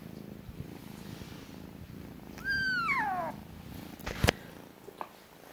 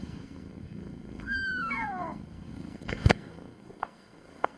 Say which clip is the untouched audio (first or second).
first